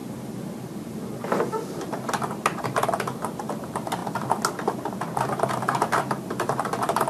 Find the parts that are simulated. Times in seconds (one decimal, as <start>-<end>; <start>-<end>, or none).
2.6-4.0; 5.6-7.1